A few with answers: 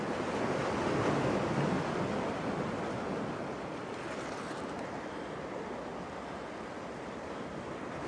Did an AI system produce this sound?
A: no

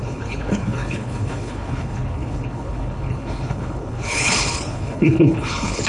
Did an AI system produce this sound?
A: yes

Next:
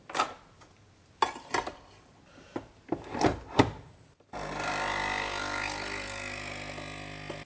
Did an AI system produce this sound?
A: no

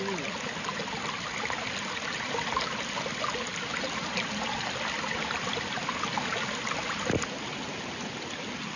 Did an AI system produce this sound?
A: no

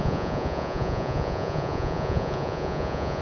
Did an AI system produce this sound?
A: yes